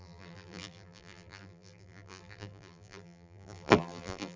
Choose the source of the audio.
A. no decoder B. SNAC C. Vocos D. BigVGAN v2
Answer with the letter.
D